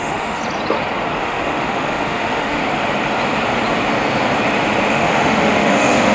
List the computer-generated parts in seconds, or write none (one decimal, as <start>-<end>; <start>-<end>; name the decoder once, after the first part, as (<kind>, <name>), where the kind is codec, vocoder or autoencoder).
0.0-0.4 (autoencoder, DAC-VAE); 1.2-2.6; 4.9-6.1